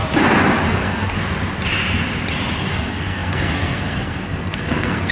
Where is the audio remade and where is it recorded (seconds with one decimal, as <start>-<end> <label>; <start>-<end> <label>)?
0.0-0.7 recorded; 0.7-1.2 remade; 1.2-2.7 recorded; 2.7-5.1 remade